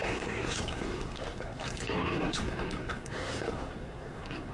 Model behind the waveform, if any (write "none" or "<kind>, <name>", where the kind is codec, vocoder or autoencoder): codec, SNAC